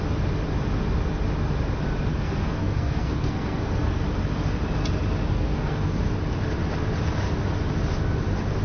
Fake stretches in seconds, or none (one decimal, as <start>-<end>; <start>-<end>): 2.1-4.0; 5.3-6.0